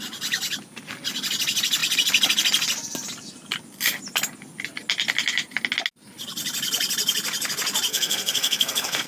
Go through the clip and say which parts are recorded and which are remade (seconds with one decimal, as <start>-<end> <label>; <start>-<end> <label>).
0.0-7.9 recorded; 7.9-9.1 remade

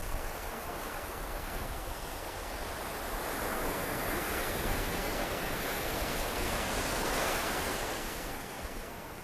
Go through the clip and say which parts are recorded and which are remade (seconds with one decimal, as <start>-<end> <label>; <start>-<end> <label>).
0.0-2.6 remade; 2.6-3.5 recorded; 3.5-9.2 remade